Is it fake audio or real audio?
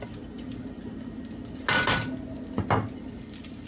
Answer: real